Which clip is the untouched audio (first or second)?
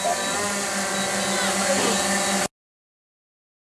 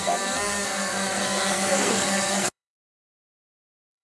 first